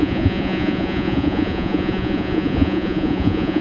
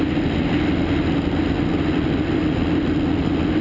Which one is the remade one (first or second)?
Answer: first